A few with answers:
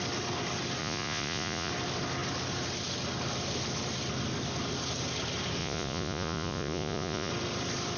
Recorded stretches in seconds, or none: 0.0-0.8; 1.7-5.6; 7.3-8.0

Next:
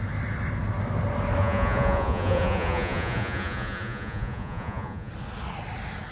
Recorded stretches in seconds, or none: 0.0-1.4; 5.1-6.1

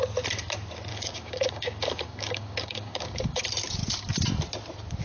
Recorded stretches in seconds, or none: 0.0-0.9; 3.4-5.0